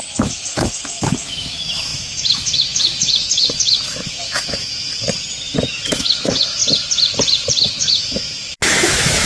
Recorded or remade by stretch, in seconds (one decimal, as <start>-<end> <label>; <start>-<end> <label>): 0.0-4.9 remade; 4.9-5.7 recorded; 5.7-6.6 remade; 6.6-7.7 recorded; 7.7-9.3 remade